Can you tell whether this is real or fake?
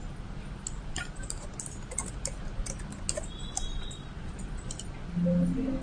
real